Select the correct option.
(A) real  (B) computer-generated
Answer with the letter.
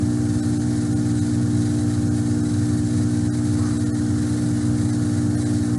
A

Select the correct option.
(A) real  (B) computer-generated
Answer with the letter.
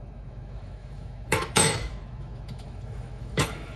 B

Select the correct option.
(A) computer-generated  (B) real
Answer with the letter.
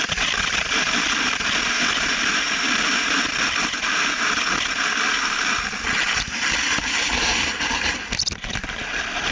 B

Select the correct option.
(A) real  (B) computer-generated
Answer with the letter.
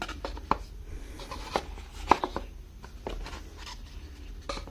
A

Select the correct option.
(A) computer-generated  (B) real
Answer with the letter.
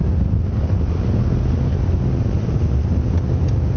B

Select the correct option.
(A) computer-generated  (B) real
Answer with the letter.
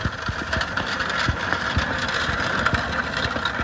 B